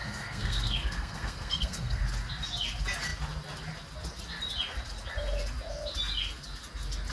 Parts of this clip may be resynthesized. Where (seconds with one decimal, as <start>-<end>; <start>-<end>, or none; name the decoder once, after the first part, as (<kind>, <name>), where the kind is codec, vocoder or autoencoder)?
0.0-2.0 (codec, SNAC)